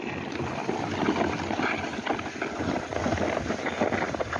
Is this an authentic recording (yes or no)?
yes